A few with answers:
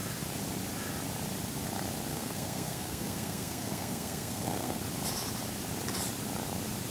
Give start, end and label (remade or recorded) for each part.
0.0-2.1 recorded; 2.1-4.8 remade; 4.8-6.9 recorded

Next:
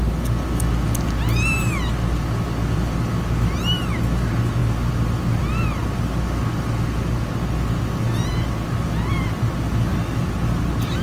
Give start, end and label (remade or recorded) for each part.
0.0-11.0 recorded

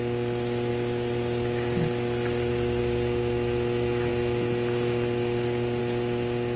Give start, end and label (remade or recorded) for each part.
0.0-6.6 recorded

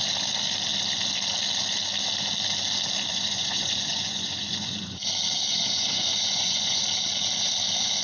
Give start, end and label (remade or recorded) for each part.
0.0-3.1 recorded; 3.1-5.0 remade; 5.0-5.5 recorded; 5.5-6.8 remade; 6.8-8.0 recorded

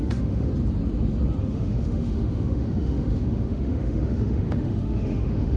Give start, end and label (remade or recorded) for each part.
0.0-0.5 remade; 0.5-1.4 recorded; 1.4-5.6 remade